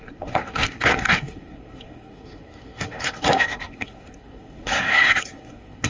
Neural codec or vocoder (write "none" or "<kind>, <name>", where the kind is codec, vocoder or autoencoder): codec, SNAC